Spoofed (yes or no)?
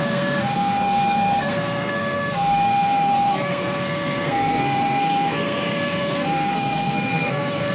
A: yes